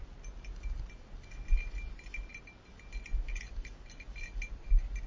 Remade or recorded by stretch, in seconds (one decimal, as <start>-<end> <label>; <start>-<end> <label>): 0.0-5.1 recorded

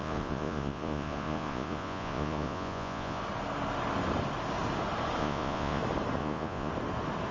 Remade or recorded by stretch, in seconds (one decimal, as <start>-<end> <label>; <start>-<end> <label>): 0.0-3.2 remade; 3.2-5.2 recorded; 5.2-5.8 remade; 5.8-6.2 recorded; 6.2-6.7 remade; 6.7-7.3 recorded

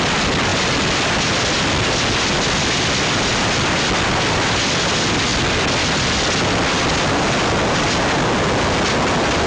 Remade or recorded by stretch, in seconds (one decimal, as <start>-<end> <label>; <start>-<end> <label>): 0.0-9.5 recorded

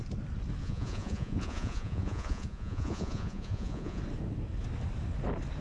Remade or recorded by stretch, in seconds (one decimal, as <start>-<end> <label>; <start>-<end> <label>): 0.0-0.6 recorded; 0.6-4.0 remade; 4.0-5.6 recorded

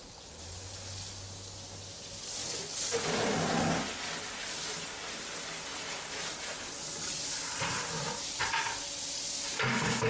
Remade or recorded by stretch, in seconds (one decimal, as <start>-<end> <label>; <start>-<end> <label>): 0.0-10.1 recorded

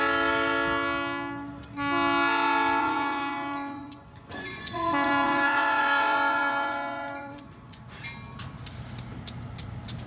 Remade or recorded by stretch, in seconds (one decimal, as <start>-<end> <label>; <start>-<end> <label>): 0.0-2.8 recorded; 2.8-7.8 remade; 7.8-10.1 recorded